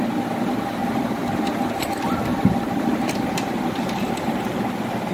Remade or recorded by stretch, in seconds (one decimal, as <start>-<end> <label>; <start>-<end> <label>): 0.0-0.8 recorded; 0.8-1.8 remade; 1.8-2.3 recorded; 2.3-4.6 remade; 4.6-5.1 recorded